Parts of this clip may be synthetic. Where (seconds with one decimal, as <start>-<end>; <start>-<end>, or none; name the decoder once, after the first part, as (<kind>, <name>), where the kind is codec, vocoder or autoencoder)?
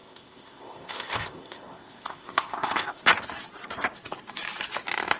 0.0-3.1 (codec, ZipCodec)